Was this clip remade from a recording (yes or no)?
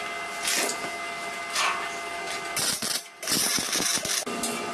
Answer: no